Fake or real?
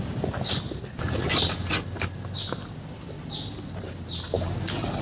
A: real